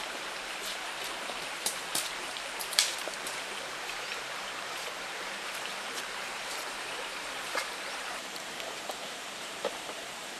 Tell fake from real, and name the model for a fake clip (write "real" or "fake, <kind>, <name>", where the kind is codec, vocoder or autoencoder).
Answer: fake, vocoder, BigVGAN v2